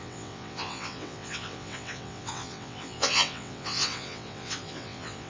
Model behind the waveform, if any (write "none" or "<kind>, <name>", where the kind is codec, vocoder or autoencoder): vocoder, WaveNeXt